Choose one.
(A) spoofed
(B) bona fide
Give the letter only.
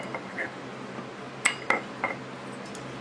B